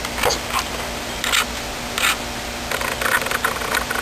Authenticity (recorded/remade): recorded